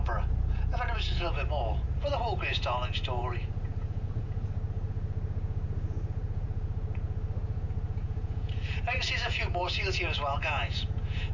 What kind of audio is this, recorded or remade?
remade